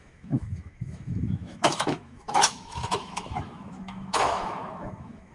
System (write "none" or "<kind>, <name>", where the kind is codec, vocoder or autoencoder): autoencoder, DAC-VAE